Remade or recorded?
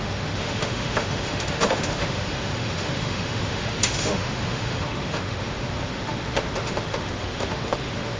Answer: remade